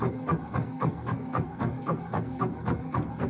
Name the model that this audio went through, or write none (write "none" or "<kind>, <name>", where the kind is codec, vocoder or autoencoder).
codec, SNAC